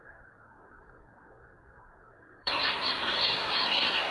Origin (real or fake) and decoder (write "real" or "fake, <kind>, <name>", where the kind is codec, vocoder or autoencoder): fake, codec, SNAC